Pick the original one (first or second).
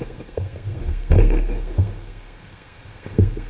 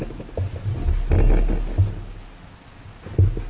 second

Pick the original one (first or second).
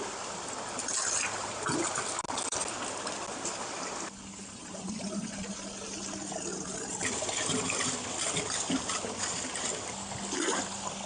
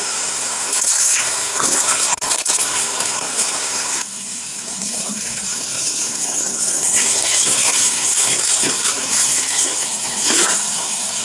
first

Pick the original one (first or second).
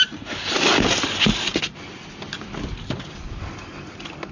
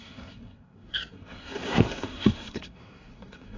first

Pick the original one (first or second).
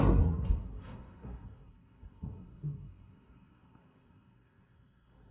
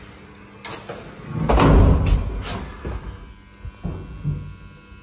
second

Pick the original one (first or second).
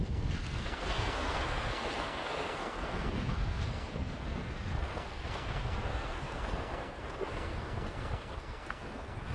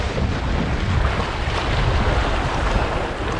second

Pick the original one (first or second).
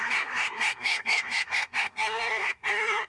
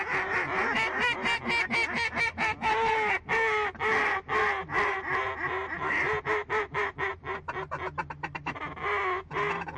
second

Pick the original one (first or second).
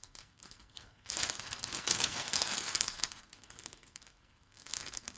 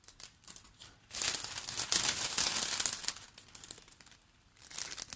second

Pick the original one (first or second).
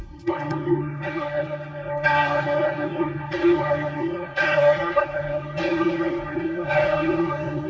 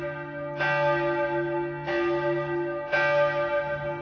second